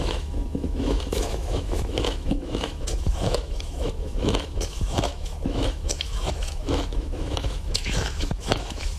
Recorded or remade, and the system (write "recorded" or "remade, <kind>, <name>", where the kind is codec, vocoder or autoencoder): remade, autoencoder, DAC-VAE